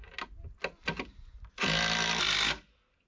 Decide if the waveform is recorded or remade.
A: recorded